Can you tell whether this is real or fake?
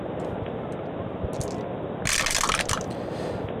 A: real